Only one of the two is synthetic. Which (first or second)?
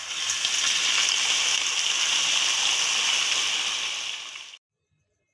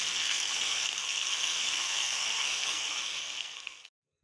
second